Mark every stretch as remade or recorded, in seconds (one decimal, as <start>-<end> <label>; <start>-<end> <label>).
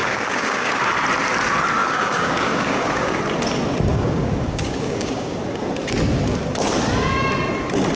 0.0-0.8 remade; 0.8-1.8 recorded; 1.8-3.2 remade; 3.2-3.9 recorded; 3.9-5.6 remade; 5.6-8.0 recorded